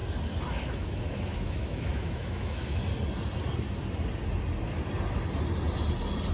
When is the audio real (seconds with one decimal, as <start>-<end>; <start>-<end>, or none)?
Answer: 0.0-0.5; 2.8-6.3